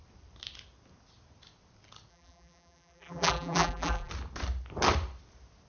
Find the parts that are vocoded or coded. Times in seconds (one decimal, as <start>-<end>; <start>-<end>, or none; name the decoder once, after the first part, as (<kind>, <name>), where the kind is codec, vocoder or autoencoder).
2.1-4.1 (vocoder, BigVGAN v2)